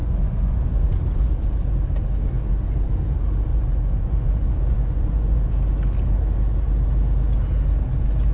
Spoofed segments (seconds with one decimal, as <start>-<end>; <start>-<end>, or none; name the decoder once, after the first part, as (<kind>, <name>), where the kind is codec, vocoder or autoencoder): 0.0-0.9 (vocoder, Vocos); 3.5-5.5